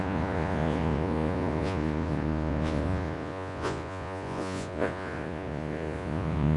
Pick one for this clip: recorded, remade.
remade